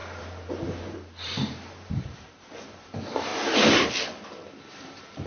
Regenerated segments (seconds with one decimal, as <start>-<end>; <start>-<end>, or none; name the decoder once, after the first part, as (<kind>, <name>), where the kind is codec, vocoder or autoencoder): 0.0-3.3 (vocoder, BigVGAN v2); 4.7-5.3